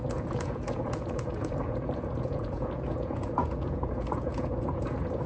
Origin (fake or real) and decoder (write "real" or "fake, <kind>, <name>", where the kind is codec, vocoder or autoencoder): fake, vocoder, Vocos